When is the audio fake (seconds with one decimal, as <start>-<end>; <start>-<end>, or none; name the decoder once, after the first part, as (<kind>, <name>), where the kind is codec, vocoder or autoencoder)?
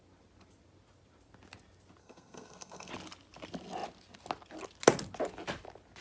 2.0-2.9 (codec, SNAC)